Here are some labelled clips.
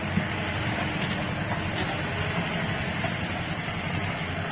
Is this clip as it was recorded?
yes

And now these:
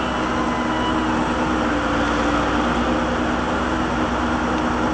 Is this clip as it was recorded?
yes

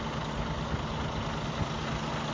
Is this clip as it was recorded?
yes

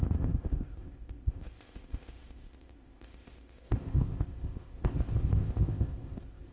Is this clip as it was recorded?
no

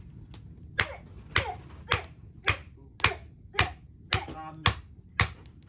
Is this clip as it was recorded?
yes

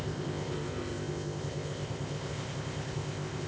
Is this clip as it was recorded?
no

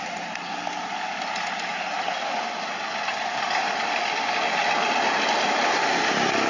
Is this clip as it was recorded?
yes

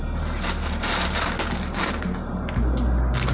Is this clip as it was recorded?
yes